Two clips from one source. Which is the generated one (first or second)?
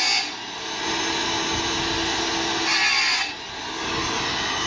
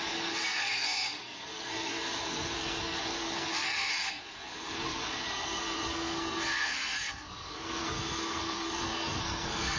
second